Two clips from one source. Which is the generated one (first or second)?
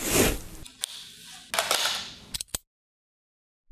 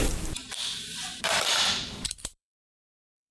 second